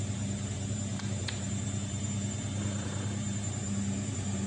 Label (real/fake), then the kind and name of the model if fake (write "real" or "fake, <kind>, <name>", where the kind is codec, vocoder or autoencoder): fake, vocoder, BigVGAN v2